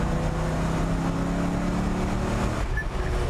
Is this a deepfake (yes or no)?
no